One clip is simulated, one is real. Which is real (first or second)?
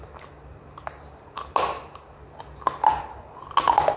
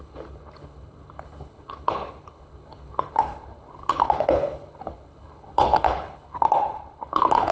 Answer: first